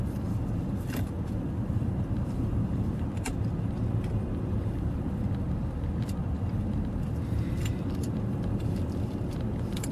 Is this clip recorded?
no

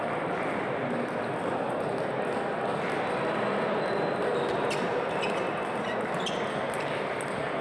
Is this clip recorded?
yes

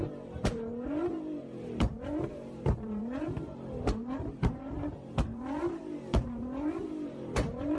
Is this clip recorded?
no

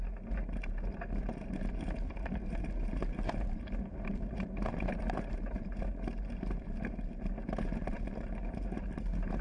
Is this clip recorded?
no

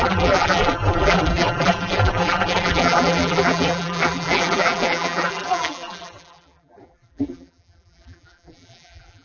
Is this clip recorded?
no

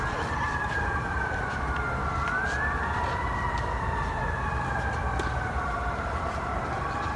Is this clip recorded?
no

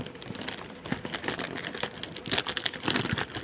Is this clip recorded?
yes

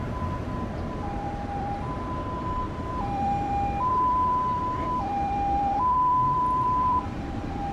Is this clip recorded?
no